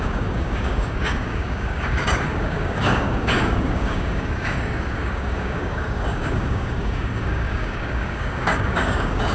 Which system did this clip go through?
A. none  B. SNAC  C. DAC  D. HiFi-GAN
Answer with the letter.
C